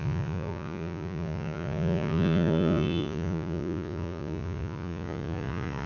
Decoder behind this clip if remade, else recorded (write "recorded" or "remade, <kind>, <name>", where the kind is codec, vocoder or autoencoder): remade, vocoder, Vocos